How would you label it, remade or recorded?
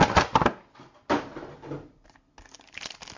recorded